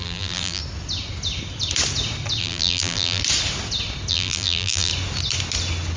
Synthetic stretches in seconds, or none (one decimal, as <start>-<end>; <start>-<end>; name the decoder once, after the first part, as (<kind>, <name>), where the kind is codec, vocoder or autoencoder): 0.0-0.6 (vocoder, BigVGAN v2); 2.4-3.2; 4.1-4.9